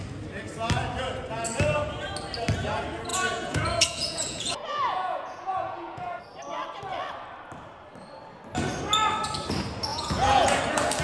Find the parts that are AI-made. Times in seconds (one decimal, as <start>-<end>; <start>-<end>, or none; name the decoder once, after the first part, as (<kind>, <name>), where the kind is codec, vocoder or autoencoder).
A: 3.1-6.2 (vocoder, Vocos); 9.9-10.6